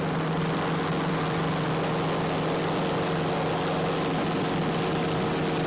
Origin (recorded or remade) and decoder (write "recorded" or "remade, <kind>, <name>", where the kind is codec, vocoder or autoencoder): recorded